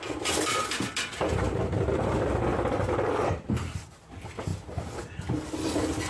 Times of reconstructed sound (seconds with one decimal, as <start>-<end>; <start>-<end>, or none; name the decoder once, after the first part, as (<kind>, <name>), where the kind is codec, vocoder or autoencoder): none